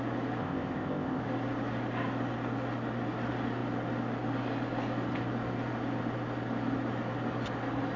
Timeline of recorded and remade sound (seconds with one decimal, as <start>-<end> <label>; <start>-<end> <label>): 0.0-0.4 recorded; 0.4-1.2 remade; 1.2-8.0 recorded